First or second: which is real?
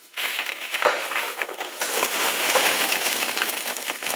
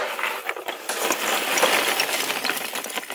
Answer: second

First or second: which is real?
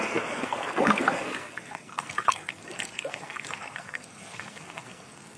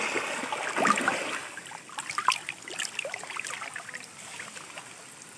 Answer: second